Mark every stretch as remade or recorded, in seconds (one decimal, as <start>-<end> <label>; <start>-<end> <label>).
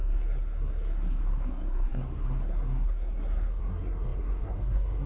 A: 0.0-5.1 remade